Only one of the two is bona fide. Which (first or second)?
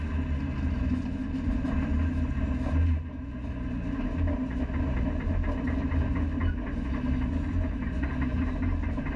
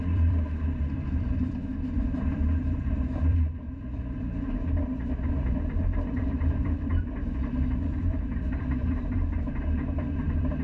first